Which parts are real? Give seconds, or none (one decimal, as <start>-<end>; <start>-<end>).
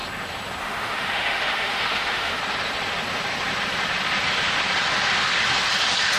0.0-0.6; 2.4-6.2